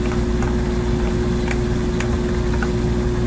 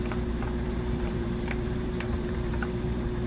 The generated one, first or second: second